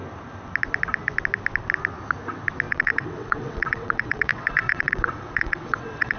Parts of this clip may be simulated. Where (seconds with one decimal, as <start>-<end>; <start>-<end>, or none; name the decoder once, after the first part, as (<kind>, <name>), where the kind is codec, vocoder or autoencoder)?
2.7-6.2 (vocoder, WaveNeXt)